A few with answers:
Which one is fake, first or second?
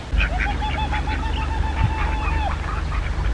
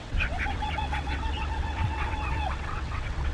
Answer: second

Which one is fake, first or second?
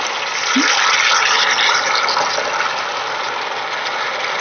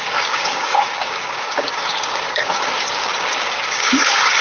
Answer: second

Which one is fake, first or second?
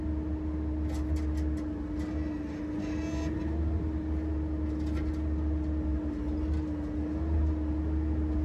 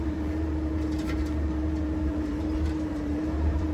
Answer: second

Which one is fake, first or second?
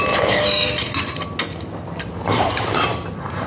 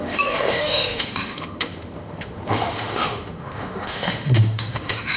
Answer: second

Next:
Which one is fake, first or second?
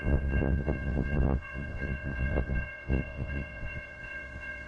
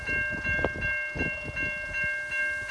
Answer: first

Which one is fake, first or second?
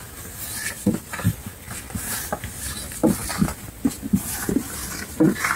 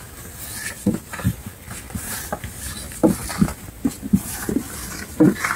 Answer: second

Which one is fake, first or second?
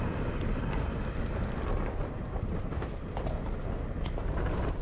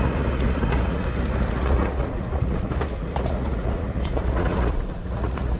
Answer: second